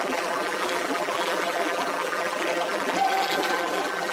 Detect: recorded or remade remade